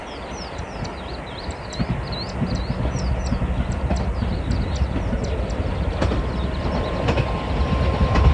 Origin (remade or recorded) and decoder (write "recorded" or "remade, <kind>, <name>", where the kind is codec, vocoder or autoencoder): recorded